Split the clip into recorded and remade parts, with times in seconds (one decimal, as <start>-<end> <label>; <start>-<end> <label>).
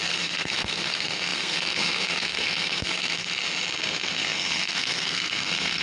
0.0-3.4 remade; 3.4-3.9 recorded; 3.9-5.8 remade